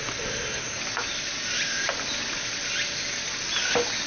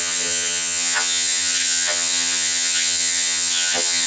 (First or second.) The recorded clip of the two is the first